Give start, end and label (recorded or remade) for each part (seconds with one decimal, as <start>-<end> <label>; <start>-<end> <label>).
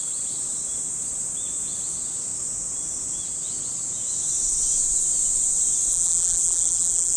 0.0-5.9 recorded; 5.9-7.2 remade